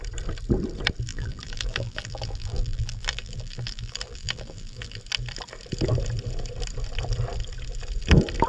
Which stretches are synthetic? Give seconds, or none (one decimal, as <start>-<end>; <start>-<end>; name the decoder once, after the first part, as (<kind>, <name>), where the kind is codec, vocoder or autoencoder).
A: 1.1-5.0 (vocoder, BigVGAN v2)